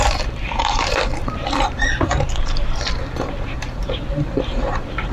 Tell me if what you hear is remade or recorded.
remade